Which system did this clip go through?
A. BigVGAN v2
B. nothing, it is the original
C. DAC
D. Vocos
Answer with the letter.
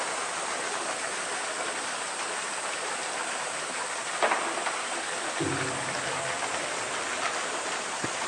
B